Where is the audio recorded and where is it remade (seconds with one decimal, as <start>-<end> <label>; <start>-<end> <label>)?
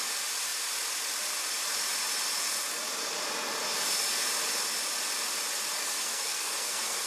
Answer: 0.0-5.8 recorded; 5.8-7.1 remade